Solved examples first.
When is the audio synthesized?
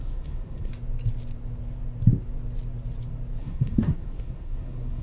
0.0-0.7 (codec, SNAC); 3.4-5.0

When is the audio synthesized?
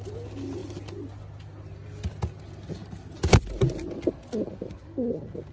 none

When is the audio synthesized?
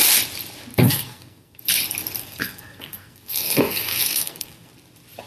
0.7-1.6 (codec, SNAC); 2.2-4.7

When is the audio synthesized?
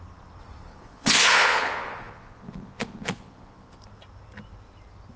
0.7-3.8 (vocoder, Vocos)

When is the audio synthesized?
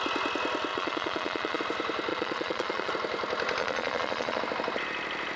0.7-1.6 (vocoder, Vocos); 2.1-2.9; 3.6-4.4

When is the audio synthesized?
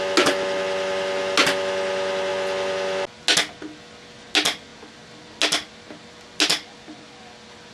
none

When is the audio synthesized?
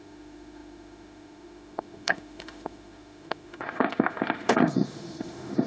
0.0-5.7 (autoencoder, DAC-VAE)